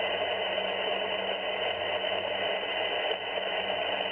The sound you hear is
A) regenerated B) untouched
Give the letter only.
B